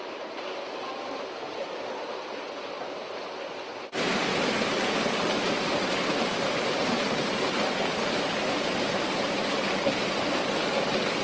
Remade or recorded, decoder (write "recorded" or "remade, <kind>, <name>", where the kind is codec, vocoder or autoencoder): remade, vocoder, BigVGAN v2